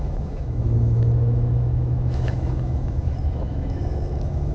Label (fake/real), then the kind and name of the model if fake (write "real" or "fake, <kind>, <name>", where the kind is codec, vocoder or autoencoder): fake, autoencoder, DAC-VAE